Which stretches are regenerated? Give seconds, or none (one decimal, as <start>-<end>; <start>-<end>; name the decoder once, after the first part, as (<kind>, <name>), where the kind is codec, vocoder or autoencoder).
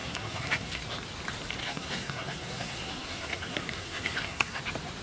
0.0-0.8 (codec, SNAC); 1.6-4.6